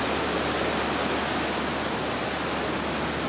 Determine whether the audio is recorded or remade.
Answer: recorded